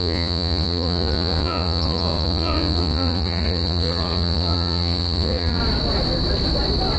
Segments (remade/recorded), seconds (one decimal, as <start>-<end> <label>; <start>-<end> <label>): 0.0-5.6 remade; 5.6-7.0 recorded